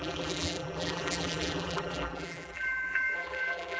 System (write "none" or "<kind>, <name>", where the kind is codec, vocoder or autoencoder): vocoder, BigVGAN v2